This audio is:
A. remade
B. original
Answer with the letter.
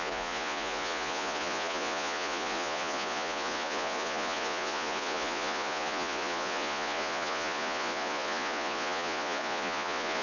A